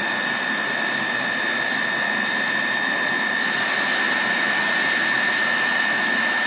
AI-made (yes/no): yes